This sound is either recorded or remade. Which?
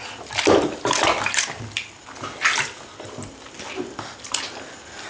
recorded